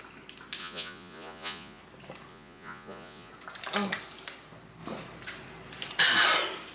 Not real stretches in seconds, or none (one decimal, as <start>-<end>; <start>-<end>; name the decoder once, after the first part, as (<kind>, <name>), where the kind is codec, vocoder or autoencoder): 0.6-1.8 (vocoder, Vocos); 2.3-3.3